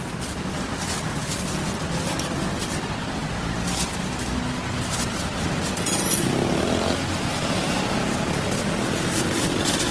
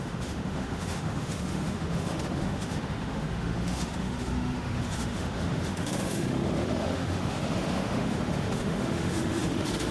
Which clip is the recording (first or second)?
first